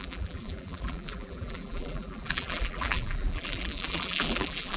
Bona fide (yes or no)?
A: no